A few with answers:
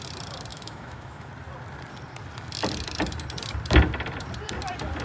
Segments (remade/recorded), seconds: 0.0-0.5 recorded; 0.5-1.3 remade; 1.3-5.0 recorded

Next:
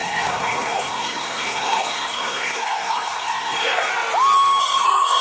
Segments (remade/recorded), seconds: 0.0-3.9 remade; 3.9-4.6 recorded; 4.6-5.2 remade

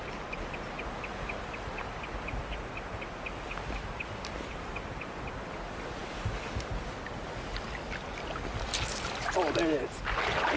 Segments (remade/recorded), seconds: 0.0-10.6 recorded

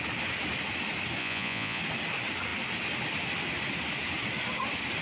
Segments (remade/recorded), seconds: 0.0-1.2 recorded; 1.2-1.8 remade; 1.8-5.0 recorded